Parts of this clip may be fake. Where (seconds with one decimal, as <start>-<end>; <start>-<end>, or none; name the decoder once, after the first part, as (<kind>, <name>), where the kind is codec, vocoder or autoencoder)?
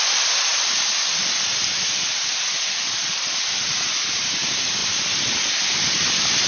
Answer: none